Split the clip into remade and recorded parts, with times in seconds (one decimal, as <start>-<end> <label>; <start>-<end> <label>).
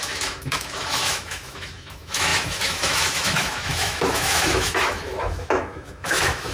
0.0-6.5 remade